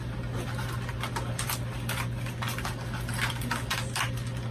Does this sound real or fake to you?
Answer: real